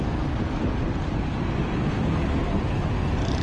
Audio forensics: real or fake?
real